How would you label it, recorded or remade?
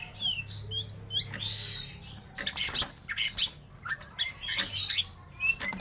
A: recorded